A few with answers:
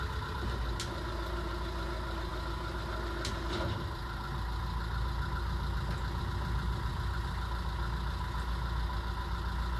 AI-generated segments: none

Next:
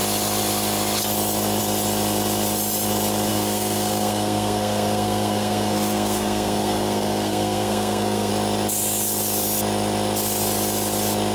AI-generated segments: 3.3-8.3 (codec, SNAC)

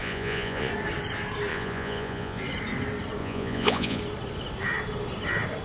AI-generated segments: 0.0-0.7 (vocoder, Vocos); 1.5-2.4; 3.2-4.0

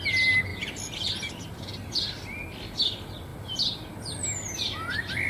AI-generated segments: 0.5-1.3 (vocoder, BigVGAN v2)

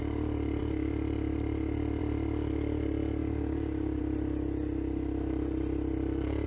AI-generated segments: 3.2-4.0 (codec, DAC)

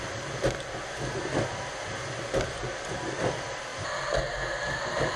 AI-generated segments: none